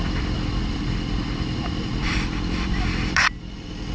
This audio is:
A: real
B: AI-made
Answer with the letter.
B